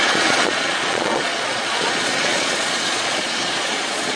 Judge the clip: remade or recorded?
remade